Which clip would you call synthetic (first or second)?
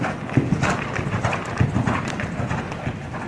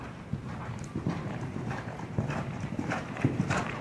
second